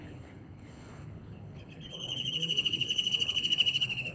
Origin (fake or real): fake